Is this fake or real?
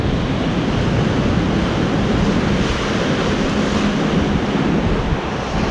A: real